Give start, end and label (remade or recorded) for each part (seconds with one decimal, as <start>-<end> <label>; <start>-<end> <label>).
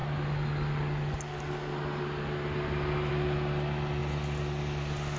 0.0-5.2 recorded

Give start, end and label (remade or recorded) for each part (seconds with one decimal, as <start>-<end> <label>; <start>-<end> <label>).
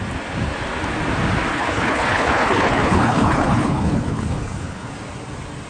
0.0-1.5 recorded; 1.5-4.9 remade; 4.9-5.7 recorded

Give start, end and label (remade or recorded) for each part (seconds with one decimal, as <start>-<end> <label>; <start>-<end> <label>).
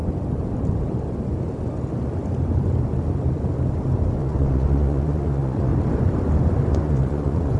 0.0-4.2 recorded; 4.2-5.7 remade; 5.7-6.7 recorded; 6.7-7.6 remade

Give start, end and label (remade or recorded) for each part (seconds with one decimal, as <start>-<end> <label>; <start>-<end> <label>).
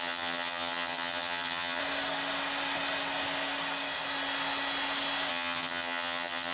0.0-1.8 remade; 1.8-5.3 recorded; 5.3-6.5 remade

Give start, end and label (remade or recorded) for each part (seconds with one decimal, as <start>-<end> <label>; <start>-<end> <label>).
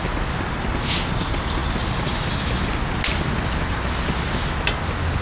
0.0-5.2 recorded